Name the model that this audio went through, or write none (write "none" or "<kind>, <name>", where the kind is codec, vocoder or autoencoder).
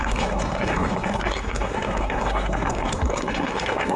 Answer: codec, SNAC